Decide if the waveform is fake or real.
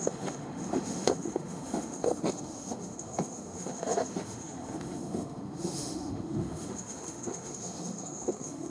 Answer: fake